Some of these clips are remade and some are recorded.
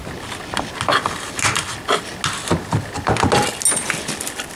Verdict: recorded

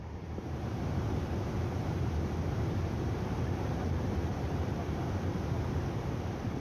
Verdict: remade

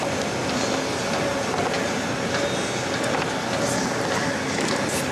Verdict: recorded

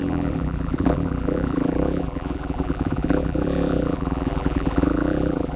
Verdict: remade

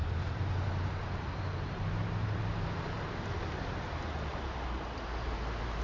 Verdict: remade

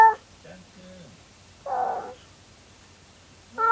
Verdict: remade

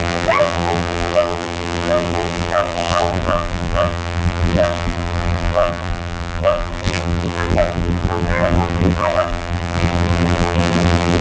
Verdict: remade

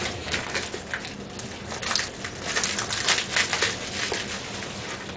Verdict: recorded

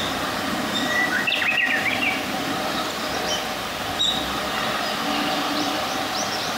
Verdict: remade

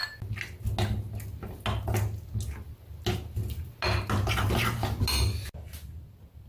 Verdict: recorded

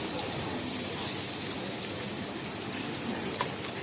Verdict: remade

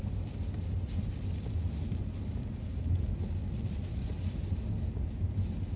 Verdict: recorded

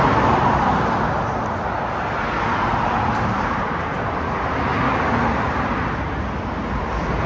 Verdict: recorded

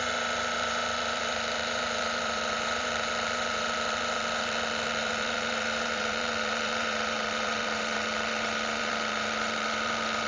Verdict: remade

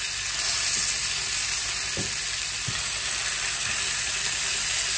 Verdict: recorded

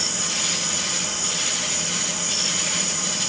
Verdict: remade